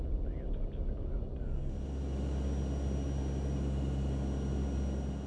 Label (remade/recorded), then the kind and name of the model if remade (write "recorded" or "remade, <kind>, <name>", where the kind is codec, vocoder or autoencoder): recorded